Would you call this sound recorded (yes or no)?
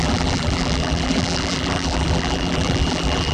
no